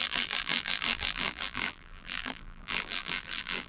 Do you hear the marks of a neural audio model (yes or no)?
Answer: yes